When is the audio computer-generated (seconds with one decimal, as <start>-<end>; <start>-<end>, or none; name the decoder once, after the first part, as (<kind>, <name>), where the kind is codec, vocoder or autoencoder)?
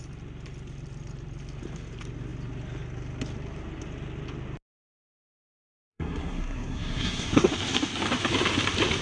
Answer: 5.6-7.5 (codec, SNAC)